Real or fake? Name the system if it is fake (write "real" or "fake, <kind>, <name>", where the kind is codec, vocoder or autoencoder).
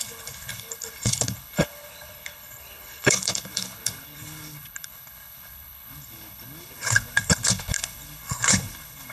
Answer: fake, codec, HILCodec